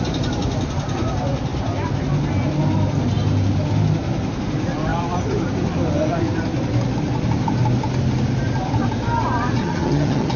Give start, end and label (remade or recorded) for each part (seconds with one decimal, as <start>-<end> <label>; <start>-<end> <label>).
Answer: 0.0-9.6 recorded; 9.6-10.4 remade